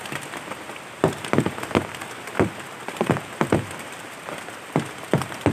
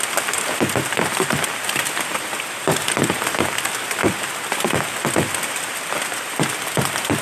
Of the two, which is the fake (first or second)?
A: second